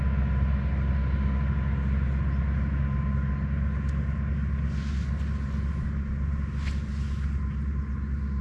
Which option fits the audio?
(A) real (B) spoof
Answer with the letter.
A